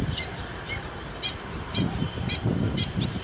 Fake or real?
fake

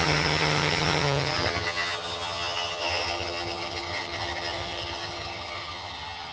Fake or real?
fake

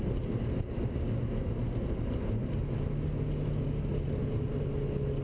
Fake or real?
real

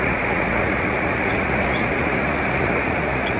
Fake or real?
fake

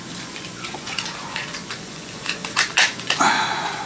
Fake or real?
fake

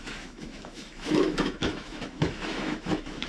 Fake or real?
fake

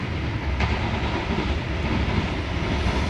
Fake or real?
real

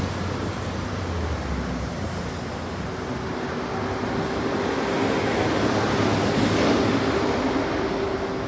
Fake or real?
real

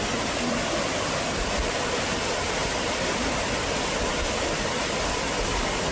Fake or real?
real